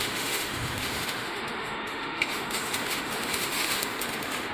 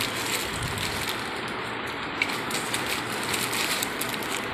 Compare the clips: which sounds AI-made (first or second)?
first